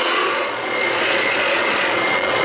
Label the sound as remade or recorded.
remade